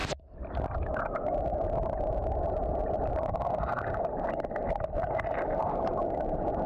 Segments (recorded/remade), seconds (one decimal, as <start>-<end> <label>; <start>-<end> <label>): 0.0-0.5 remade; 0.5-2.8 recorded; 2.8-5.9 remade; 5.9-6.7 recorded